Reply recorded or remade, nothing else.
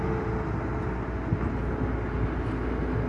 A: recorded